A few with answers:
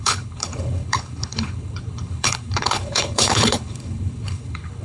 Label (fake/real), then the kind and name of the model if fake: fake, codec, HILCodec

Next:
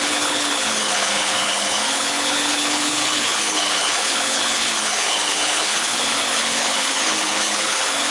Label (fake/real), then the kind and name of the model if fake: fake, codec, HILCodec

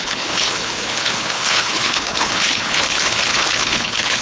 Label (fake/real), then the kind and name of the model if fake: fake, codec, HILCodec